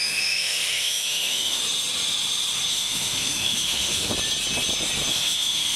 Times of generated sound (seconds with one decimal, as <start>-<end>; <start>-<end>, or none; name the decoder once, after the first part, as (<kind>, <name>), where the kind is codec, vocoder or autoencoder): 0.0-1.6 (autoencoder, DAC-VAE); 2.7-4.1; 5.1-5.8